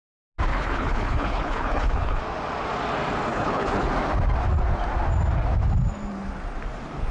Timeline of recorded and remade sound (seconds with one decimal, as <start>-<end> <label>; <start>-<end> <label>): 0.0-0.5 recorded; 0.5-2.2 remade; 2.2-3.3 recorded; 3.3-3.9 remade; 3.9-7.1 recorded